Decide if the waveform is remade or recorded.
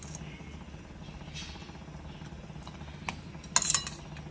recorded